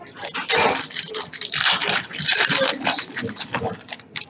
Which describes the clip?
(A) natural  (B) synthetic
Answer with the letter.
B